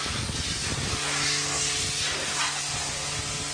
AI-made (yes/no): no